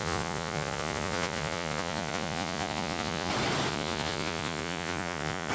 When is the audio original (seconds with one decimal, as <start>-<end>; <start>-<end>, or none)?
3.3-3.7